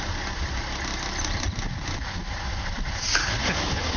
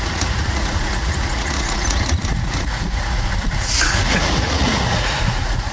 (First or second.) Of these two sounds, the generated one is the second